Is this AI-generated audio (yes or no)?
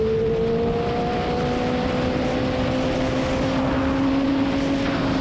no